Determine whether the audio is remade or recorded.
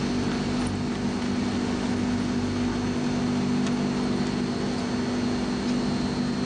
recorded